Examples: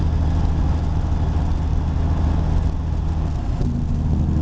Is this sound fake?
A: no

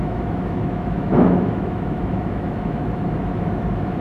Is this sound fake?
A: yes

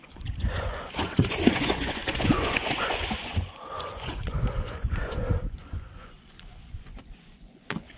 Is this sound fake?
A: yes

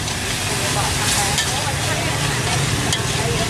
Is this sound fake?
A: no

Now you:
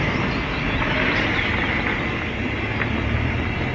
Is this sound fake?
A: no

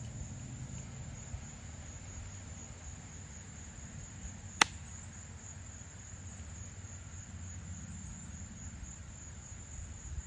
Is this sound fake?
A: no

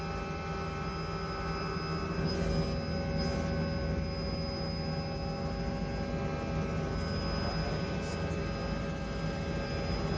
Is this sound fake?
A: no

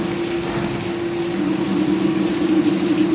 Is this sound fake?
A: no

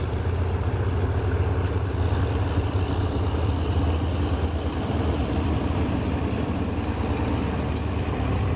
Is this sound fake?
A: no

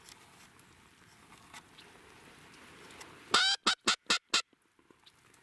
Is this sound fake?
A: no